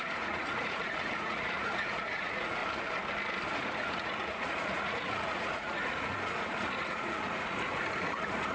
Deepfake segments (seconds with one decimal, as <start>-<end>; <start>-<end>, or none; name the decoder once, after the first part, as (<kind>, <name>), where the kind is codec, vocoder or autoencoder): 0.0-2.6 (vocoder, Vocos); 3.5-8.5